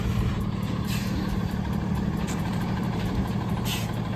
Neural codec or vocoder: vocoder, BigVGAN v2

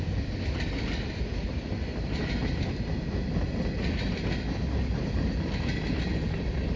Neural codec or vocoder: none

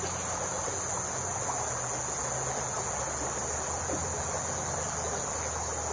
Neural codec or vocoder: none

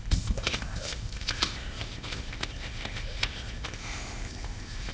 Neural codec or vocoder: codec, ZipCodec